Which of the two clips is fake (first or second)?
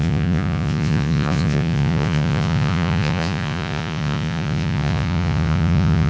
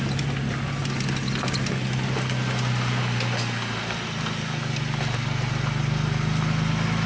first